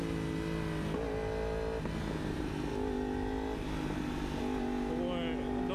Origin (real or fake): real